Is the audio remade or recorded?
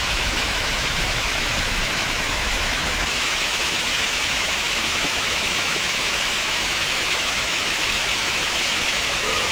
remade